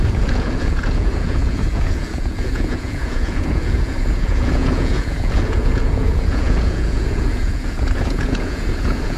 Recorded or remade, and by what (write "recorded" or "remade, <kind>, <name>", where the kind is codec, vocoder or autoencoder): remade, vocoder, Vocos